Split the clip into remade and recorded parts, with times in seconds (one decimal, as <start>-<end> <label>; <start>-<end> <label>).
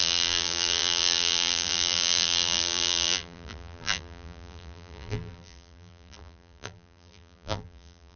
0.0-8.2 remade